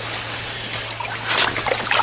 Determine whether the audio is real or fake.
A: real